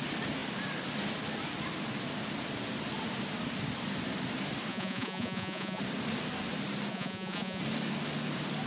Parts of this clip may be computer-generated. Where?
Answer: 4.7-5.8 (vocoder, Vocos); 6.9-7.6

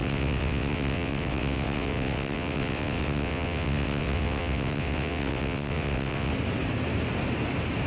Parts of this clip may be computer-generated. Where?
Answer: 0.0-6.3 (vocoder, WaveNeXt)